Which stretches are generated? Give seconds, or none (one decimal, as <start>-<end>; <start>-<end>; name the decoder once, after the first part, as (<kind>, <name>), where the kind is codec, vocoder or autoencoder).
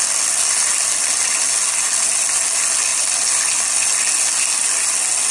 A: none